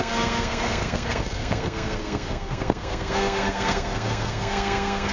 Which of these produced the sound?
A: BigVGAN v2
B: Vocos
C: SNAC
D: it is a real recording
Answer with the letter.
C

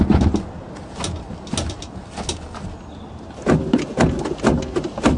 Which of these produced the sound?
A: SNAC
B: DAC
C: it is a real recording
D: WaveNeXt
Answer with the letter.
C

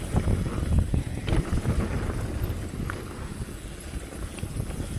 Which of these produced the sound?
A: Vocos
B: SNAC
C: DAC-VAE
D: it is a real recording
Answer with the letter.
D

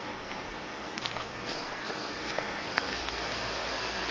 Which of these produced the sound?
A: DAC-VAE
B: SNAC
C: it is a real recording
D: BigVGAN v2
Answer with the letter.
B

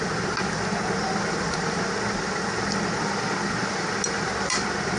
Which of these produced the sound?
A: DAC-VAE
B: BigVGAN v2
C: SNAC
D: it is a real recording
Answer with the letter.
D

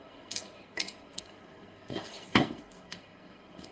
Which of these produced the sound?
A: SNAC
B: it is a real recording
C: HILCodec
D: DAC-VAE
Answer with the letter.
A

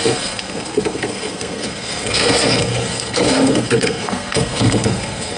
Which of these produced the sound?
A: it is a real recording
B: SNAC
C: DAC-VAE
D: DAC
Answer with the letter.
B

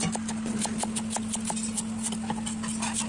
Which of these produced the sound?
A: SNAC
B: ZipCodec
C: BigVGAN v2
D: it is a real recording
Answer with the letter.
D